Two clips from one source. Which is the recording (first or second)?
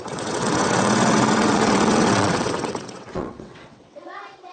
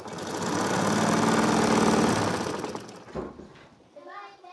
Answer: second